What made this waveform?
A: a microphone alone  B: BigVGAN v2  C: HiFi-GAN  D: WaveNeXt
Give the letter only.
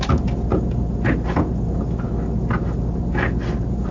A